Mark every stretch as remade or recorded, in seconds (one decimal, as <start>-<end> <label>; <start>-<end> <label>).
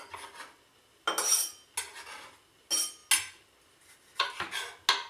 0.0-5.1 recorded